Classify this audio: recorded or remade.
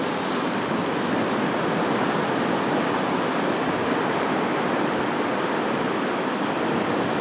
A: recorded